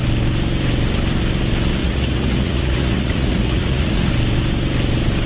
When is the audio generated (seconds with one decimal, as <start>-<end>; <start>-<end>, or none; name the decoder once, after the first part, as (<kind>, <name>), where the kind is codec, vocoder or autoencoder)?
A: 1.8-4.1 (vocoder, Vocos)